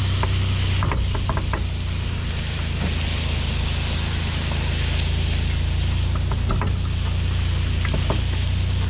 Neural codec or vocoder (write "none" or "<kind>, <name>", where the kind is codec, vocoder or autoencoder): none